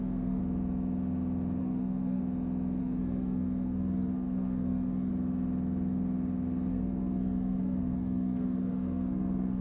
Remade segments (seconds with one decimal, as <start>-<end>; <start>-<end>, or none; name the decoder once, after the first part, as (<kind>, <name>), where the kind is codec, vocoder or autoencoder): 0.0-0.4 (codec, SNAC); 1.6-2.2; 2.8-5.1; 6.7-9.6